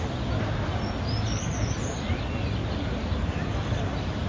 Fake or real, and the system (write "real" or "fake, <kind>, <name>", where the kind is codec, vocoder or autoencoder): real